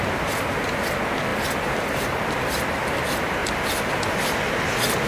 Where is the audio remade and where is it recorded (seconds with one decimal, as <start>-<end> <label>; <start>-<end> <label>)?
0.0-1.3 recorded; 1.3-2.3 remade; 2.3-5.1 recorded